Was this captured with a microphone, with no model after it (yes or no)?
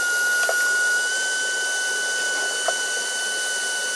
yes